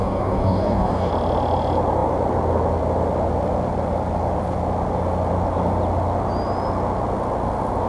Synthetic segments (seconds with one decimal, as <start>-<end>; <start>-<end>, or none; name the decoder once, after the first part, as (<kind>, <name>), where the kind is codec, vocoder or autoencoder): 0.0-1.1 (codec, DAC)